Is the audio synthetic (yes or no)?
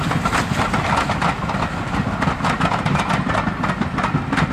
no